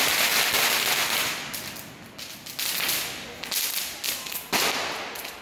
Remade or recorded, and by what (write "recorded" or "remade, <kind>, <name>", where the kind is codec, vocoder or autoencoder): recorded